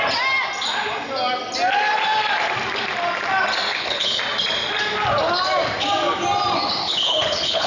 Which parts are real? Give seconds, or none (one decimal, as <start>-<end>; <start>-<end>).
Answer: 0.0-3.7; 4.2-6.8